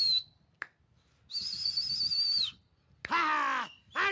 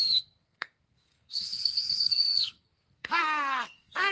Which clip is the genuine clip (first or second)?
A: first